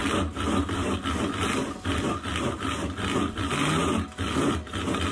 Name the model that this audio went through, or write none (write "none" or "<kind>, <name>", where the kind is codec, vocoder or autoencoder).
none